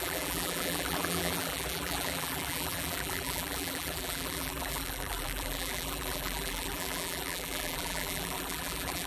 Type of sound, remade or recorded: remade